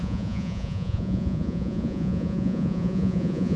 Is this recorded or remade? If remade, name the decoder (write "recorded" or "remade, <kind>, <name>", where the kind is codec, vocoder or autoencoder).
remade, vocoder, Vocos